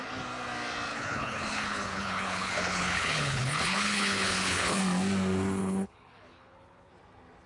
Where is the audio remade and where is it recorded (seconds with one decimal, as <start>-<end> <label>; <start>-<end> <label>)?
0.0-0.9 recorded; 0.9-4.8 remade; 4.8-5.6 recorded; 5.6-6.9 remade; 6.9-7.5 recorded

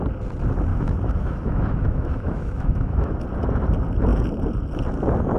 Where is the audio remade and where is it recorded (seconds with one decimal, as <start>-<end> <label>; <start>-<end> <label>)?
0.0-0.7 recorded; 0.7-3.2 remade; 3.2-5.4 recorded